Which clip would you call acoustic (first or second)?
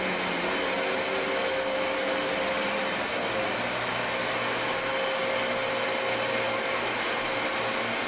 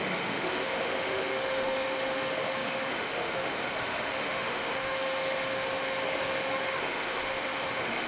first